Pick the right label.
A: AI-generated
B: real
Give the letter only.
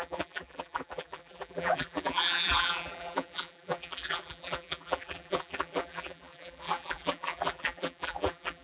A